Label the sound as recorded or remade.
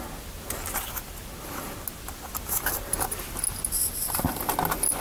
recorded